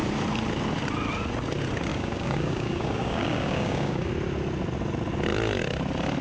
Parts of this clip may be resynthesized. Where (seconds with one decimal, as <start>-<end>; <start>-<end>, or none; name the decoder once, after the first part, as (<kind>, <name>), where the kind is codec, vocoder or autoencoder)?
1.9-4.1 (codec, DAC)